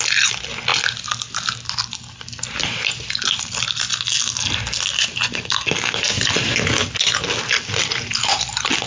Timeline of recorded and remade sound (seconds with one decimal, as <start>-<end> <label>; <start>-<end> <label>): 0.0-8.9 recorded